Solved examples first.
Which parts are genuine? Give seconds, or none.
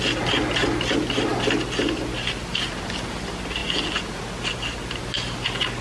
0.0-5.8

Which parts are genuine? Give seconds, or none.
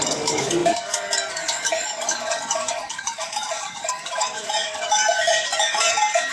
none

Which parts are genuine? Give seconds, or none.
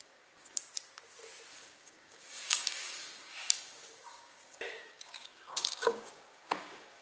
0.6-1.5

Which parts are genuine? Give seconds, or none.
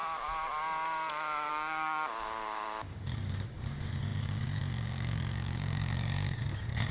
0.0-1.5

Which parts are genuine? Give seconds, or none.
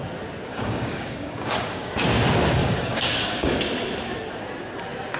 0.0-0.5; 1.9-2.6; 3.6-5.2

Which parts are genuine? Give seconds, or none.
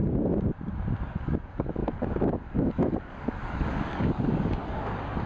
0.0-1.0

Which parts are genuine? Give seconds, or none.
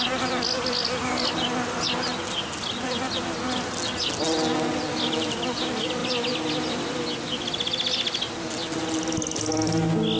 0.0-10.2